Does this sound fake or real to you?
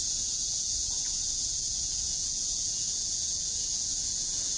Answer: fake